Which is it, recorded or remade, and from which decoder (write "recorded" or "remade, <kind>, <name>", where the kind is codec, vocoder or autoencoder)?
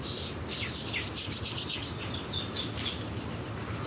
recorded